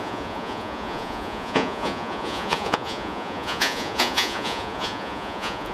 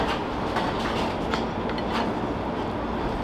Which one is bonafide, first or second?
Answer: second